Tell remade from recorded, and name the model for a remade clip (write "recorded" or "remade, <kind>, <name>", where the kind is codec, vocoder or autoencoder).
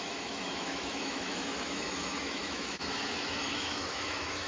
remade, autoencoder, DAC-VAE